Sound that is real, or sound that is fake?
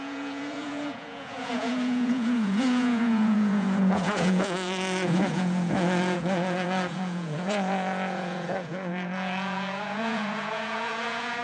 fake